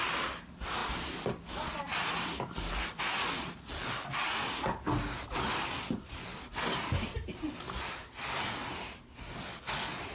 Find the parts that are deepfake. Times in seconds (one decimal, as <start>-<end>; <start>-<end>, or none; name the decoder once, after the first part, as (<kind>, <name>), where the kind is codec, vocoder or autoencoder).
none